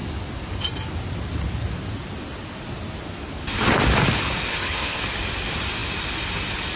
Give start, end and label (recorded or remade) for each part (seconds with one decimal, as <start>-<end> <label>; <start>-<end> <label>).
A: 0.0-4.5 recorded; 4.5-5.0 remade; 5.0-6.8 recorded